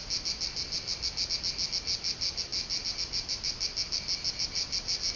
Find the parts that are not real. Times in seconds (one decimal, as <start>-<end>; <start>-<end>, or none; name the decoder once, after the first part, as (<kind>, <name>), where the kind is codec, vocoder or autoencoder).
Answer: none